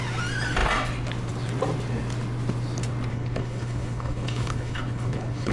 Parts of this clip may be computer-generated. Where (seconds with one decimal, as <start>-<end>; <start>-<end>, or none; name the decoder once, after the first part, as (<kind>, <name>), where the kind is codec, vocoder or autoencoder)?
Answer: 3.1-5.5 (codec, HILCodec)